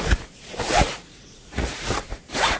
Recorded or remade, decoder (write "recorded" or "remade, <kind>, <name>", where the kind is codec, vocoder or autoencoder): remade, vocoder, Vocos